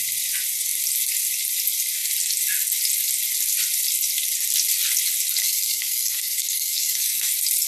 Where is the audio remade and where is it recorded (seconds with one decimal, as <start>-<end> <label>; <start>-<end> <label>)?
0.0-5.4 recorded; 5.4-7.3 remade; 7.3-7.7 recorded